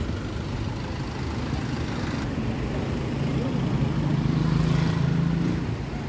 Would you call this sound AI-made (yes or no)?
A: no